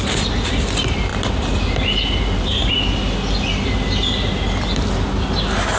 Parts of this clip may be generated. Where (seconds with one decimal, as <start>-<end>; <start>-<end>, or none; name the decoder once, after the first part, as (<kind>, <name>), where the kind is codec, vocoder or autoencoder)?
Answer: none